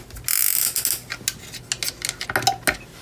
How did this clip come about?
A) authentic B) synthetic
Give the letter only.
A